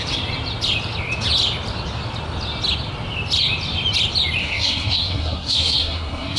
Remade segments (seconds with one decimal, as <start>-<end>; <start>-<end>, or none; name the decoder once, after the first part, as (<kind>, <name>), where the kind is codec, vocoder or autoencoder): 4.4-6.4 (codec, SNAC)